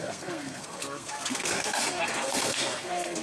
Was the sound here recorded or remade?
remade